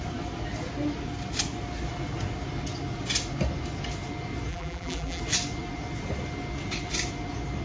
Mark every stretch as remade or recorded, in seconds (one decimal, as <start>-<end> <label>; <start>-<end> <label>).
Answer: 0.0-4.5 recorded; 4.5-5.2 remade; 5.2-7.6 recorded

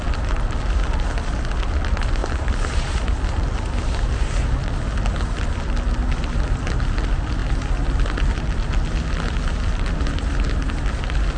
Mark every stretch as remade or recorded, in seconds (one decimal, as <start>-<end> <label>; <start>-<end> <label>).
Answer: 0.0-11.4 recorded

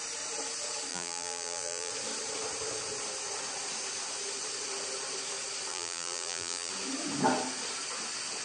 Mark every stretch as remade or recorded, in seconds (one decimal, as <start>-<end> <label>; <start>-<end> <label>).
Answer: 0.0-0.9 recorded; 0.9-1.9 remade; 1.9-5.7 recorded; 5.7-6.7 remade; 6.7-8.4 recorded

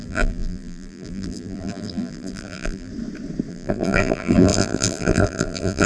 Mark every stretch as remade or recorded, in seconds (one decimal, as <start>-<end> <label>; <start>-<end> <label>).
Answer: 0.0-2.9 remade; 2.9-3.5 recorded; 3.5-5.9 remade

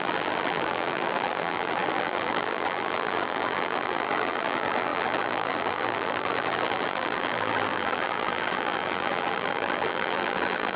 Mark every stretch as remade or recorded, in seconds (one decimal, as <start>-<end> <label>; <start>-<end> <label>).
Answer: 0.0-10.8 remade

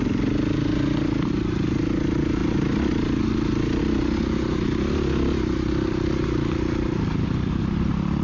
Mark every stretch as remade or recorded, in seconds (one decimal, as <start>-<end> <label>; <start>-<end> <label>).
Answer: 0.0-8.2 recorded

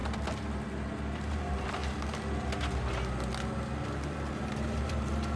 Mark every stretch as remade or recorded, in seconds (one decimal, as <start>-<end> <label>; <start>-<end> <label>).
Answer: 0.0-1.3 recorded; 1.3-1.8 remade; 1.8-4.3 recorded; 4.3-5.4 remade

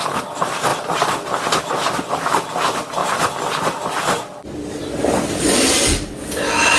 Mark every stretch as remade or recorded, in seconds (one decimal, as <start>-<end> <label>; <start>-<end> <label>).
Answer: 0.0-6.8 recorded